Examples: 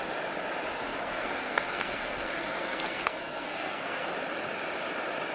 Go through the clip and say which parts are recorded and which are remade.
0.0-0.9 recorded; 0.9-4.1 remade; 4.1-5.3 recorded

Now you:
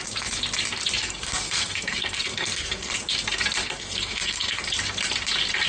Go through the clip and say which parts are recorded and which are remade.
0.0-1.0 recorded; 1.0-2.9 remade; 2.9-3.6 recorded; 3.6-4.6 remade; 4.6-5.7 recorded

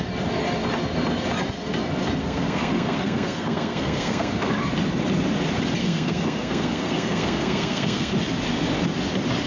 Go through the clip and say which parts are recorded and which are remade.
0.0-2.2 recorded; 2.2-4.5 remade; 4.5-5.8 recorded; 5.8-8.1 remade; 8.1-9.5 recorded